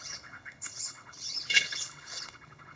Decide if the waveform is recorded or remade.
remade